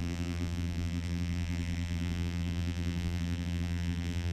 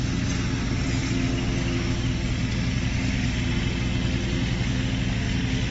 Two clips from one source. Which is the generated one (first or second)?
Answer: first